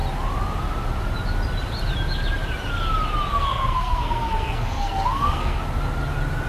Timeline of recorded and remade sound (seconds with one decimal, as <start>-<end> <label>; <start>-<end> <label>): 0.0-3.3 recorded; 3.3-5.6 remade; 5.6-6.5 recorded

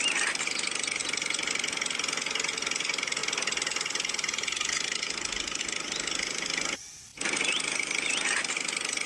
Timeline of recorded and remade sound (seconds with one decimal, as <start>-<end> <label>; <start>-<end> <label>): 0.0-9.1 recorded

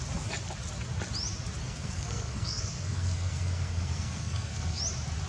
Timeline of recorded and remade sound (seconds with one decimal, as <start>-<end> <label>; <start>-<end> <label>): 0.0-1.6 recorded; 1.6-4.8 remade; 4.8-5.3 recorded

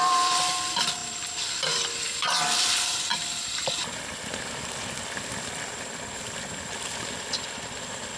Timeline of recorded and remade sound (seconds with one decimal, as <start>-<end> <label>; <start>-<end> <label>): 0.0-8.2 remade

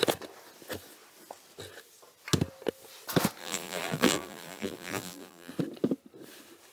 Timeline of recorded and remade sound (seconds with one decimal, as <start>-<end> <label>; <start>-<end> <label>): 0.0-3.4 recorded; 3.4-5.5 remade; 5.5-6.7 recorded